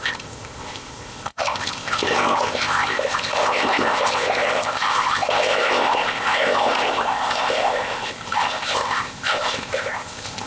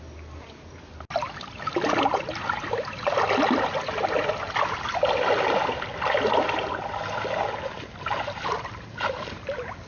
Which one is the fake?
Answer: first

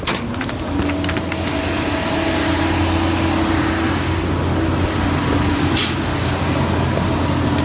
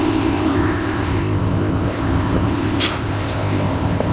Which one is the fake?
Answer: second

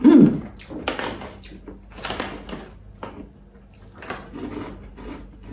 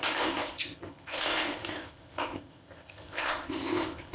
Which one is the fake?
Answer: second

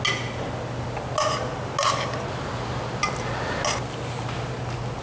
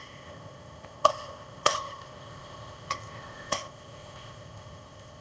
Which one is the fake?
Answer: second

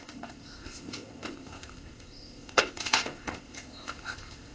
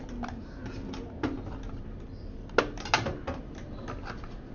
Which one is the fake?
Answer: first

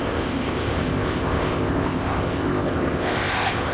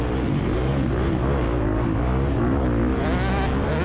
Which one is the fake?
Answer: first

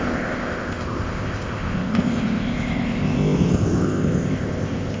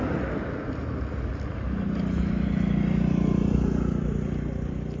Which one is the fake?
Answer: first